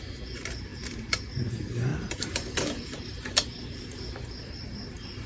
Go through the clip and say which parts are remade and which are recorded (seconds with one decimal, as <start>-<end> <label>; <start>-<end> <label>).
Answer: 0.0-5.3 remade